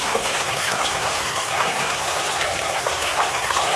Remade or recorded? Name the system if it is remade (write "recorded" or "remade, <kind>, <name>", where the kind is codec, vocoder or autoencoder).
remade, codec, SNAC